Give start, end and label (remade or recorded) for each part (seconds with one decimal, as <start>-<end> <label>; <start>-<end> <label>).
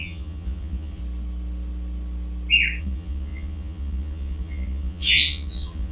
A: 0.0-1.0 remade; 1.0-2.8 recorded; 2.8-5.9 remade